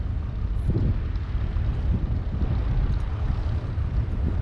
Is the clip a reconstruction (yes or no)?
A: no